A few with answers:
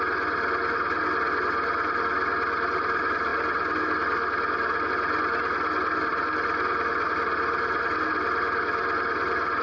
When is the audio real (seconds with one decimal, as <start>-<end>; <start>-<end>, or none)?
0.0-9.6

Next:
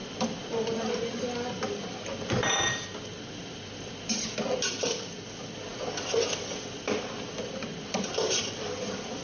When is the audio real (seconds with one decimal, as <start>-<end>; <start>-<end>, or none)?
0.0-9.2

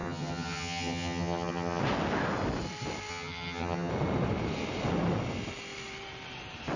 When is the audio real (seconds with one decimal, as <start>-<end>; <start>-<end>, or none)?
1.8-3.1; 3.9-6.8

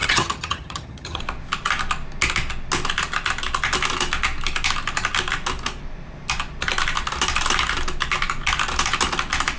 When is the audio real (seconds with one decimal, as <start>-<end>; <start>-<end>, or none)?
1.2-9.6

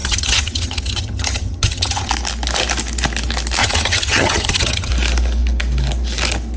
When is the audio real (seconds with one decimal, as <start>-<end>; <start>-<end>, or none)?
2.1-3.6; 4.9-6.6

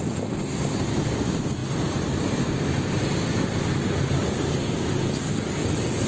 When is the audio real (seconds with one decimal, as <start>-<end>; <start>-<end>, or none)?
0.0-6.1